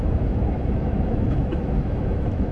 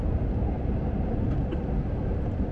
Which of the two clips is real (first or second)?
second